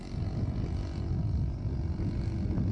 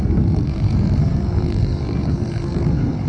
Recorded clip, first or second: first